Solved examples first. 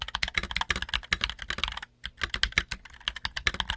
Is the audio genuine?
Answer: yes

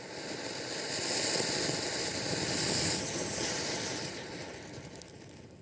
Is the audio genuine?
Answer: yes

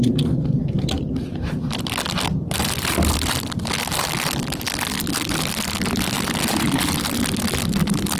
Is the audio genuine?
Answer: no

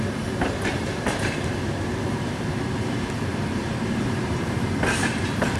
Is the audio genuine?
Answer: no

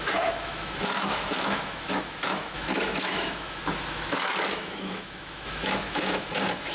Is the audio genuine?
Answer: no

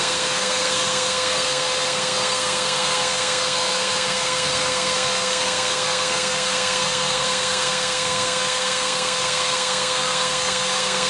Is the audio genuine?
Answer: no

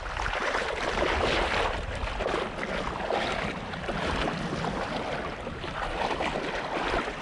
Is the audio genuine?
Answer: yes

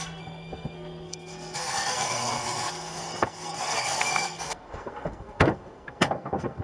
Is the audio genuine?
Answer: no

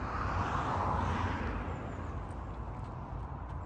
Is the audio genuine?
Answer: yes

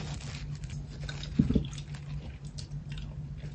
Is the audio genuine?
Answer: yes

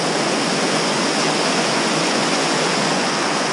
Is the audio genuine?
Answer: no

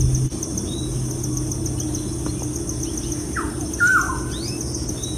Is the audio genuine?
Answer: yes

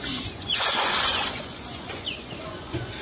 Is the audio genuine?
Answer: no